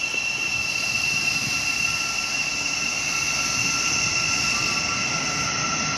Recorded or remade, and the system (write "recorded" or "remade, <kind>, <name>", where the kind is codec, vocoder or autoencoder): recorded